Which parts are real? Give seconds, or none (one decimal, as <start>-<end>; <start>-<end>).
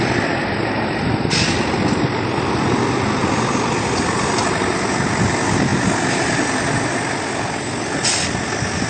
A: 0.0-8.9